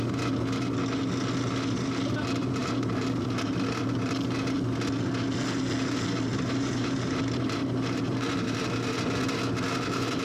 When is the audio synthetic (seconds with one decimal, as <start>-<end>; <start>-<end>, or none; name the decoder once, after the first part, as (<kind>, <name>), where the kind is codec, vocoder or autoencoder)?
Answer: 2.6-4.1 (vocoder, BigVGAN v2); 6.3-8.6